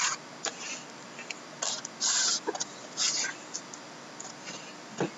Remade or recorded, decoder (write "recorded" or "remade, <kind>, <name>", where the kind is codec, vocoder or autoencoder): recorded